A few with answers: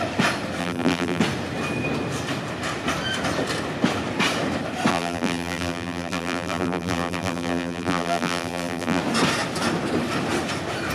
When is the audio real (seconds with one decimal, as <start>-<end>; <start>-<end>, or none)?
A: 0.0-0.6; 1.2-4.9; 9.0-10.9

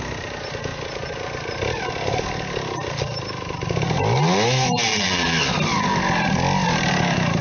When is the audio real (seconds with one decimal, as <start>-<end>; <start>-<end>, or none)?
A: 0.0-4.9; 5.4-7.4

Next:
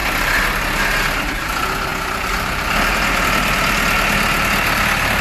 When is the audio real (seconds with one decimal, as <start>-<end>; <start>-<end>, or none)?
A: 0.0-5.2

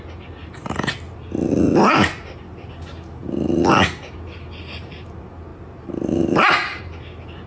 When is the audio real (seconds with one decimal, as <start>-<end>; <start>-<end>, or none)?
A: 0.0-0.4; 1.2-5.5; 6.8-7.5